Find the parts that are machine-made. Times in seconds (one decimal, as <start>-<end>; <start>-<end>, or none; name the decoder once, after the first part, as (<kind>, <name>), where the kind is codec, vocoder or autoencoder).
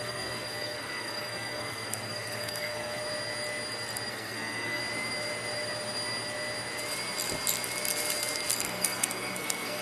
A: 0.0-3.0 (codec, SNAC); 4.1-4.8; 8.5-9.8